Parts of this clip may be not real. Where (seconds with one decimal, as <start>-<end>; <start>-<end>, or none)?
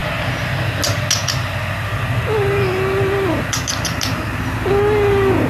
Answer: none